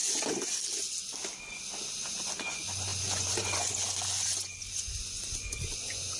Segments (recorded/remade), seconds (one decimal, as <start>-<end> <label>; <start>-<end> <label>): 0.0-2.1 recorded; 2.1-6.2 remade